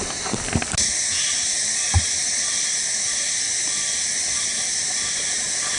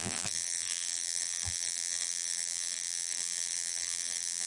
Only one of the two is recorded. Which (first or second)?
first